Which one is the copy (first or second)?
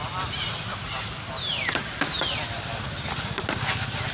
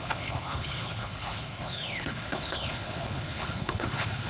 second